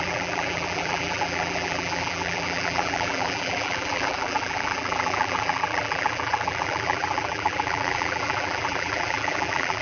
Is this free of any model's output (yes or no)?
no